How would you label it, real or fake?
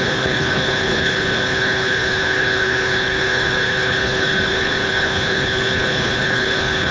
fake